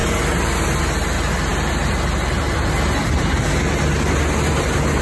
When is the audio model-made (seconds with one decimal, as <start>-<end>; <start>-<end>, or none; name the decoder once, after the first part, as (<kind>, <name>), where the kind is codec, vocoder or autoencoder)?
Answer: none